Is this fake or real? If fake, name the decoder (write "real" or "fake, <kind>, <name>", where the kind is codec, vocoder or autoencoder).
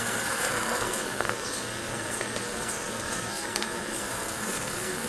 fake, codec, SNAC